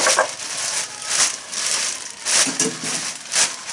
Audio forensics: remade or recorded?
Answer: recorded